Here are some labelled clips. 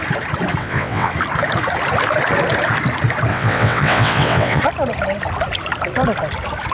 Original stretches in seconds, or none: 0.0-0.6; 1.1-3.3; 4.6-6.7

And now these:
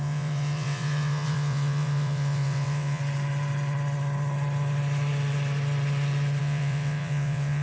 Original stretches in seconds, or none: 3.0-6.4